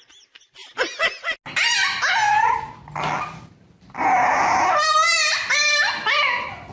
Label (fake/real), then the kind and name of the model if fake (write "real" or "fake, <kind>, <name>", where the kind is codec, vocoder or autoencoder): real